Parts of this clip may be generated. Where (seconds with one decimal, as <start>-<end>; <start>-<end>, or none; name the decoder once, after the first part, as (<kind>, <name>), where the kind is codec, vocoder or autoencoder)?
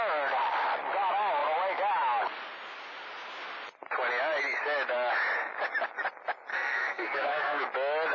6.5-7.6 (codec, SNAC)